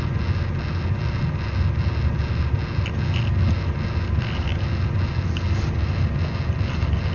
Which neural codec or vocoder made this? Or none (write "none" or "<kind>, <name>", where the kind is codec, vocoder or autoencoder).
none